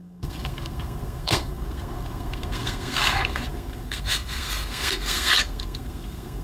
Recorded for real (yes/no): no